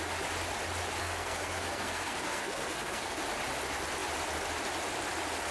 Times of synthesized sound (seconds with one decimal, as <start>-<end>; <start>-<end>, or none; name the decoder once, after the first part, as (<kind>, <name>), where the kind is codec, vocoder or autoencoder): 1.0-3.2 (codec, SNAC)